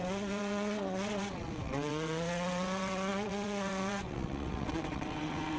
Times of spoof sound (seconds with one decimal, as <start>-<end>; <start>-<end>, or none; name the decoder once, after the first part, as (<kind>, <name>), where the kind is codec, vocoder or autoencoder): 0.0-5.6 (vocoder, WaveNeXt)

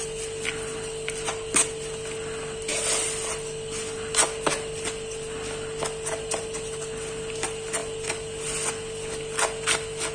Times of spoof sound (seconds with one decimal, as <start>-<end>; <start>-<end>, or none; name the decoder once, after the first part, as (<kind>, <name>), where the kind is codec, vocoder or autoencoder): none

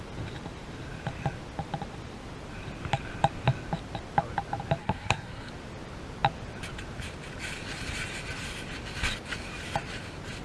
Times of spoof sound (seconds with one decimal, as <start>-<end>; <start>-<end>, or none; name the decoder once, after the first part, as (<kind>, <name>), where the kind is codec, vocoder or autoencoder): 4.8-5.5 (codec, SNAC)

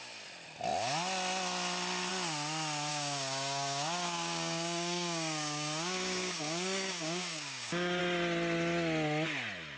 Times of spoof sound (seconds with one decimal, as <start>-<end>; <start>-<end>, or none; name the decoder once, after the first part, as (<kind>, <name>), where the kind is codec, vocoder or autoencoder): 2.9-8.0 (codec, DAC)

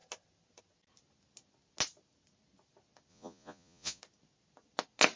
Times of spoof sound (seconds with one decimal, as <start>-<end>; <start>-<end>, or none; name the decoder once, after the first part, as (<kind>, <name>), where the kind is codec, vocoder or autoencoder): 3.1-4.0 (vocoder, Vocos)

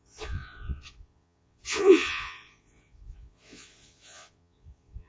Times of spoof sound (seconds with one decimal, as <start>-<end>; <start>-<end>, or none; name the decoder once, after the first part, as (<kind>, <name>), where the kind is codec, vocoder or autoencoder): 0.0-5.1 (vocoder, Vocos)

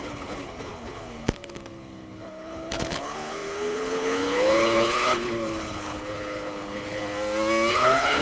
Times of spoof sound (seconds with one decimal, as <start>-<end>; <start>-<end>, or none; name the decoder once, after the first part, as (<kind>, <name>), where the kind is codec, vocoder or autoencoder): 0.0-7.0 (codec, HILCodec); 7.7-8.2